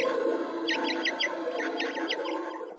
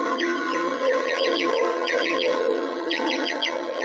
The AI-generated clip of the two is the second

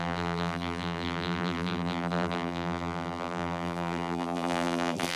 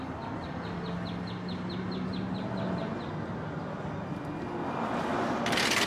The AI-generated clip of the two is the first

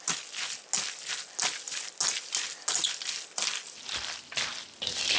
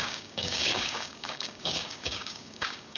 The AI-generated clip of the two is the second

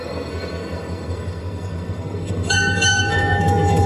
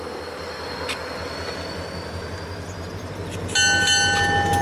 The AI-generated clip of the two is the first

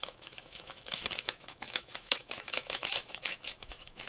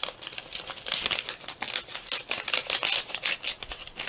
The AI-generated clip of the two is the first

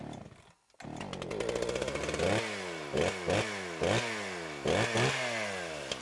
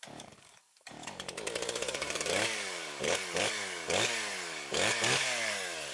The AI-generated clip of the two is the second